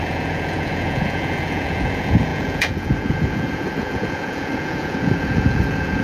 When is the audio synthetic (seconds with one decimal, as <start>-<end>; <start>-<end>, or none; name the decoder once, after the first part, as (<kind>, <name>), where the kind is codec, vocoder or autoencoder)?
0.0-6.0 (vocoder, Vocos)